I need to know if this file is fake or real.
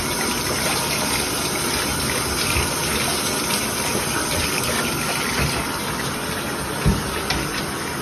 real